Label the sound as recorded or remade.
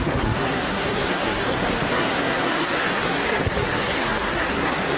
remade